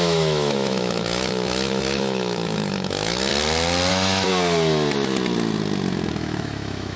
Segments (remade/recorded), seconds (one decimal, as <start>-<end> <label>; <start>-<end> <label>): 0.0-3.3 remade; 3.3-3.9 recorded; 3.9-4.3 remade; 4.3-6.1 recorded; 6.1-7.0 remade